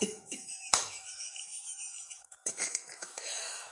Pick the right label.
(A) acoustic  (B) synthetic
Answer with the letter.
B